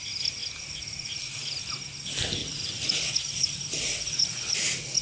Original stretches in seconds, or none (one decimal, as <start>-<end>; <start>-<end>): 0.0-2.4

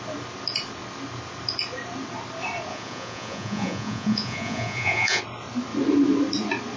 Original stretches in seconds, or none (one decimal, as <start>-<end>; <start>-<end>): 0.0-2.7; 5.2-6.8

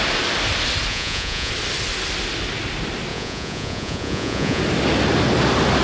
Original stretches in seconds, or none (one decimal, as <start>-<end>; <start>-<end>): 0.0-0.9; 1.5-3.1; 4.6-5.8

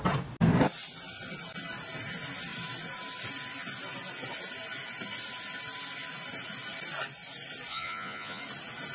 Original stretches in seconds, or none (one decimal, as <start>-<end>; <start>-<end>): 0.0-7.7; 8.4-8.9

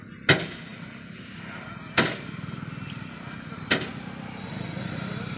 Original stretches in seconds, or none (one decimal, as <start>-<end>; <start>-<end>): 0.0-5.4

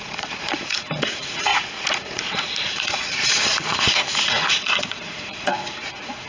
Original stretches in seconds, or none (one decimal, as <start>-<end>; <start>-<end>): 1.5-2.0

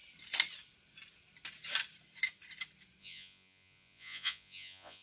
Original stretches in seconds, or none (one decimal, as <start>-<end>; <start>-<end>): 0.0-3.0

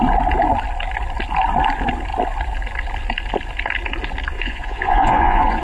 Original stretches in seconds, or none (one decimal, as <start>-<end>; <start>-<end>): 0.0-4.3